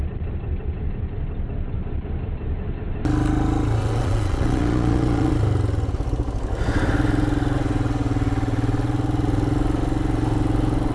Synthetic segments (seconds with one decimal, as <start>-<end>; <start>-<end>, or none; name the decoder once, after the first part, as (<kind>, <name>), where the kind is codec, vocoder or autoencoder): 3.8-5.3 (vocoder, Vocos)